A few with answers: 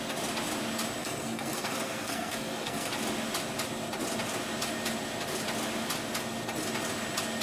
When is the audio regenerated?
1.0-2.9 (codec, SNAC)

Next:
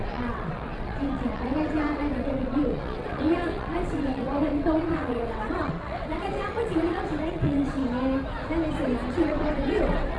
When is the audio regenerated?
0.0-7.8 (vocoder, WaveNeXt); 9.1-10.2

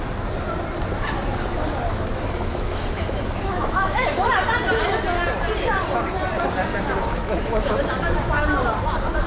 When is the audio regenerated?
1.9-4.3 (autoencoder, DAC-VAE); 7.0-7.8

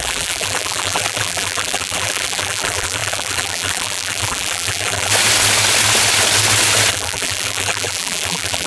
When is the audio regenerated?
0.0-5.1 (vocoder, BigVGAN v2); 6.9-8.7

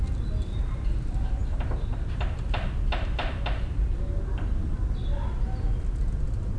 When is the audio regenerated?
none

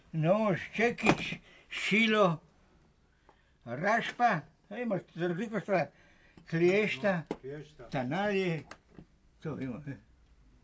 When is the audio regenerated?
5.3-5.8 (codec, SNAC)

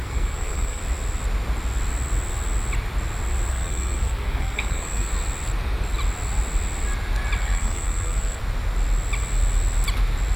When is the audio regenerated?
0.0-0.8 (codec, SNAC); 3.5-5.1; 7.4-8.4

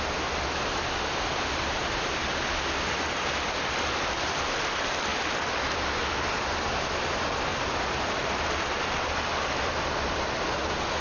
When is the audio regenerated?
7.5-8.3 (vocoder, BigVGAN v2)